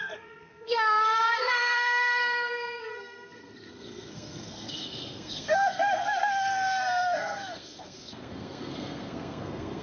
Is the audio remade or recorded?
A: remade